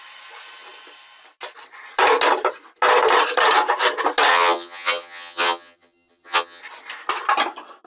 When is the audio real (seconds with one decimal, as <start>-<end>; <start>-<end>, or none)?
0.0-4.3; 6.6-7.9